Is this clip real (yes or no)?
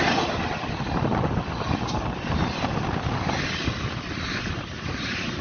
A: no